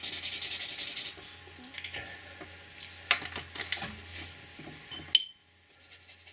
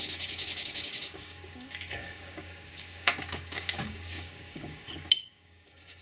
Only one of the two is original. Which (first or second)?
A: first